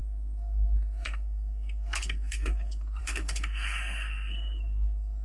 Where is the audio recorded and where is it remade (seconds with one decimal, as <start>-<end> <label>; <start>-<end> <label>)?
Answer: 0.0-5.2 remade